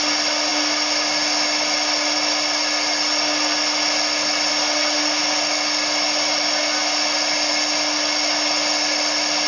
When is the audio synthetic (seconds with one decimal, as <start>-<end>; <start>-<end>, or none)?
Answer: none